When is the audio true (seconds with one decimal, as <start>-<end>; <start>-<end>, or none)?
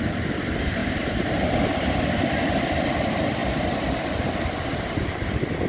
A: 0.0-5.7